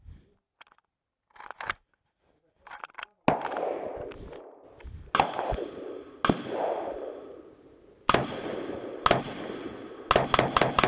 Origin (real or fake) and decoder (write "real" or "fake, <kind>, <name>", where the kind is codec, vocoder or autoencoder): real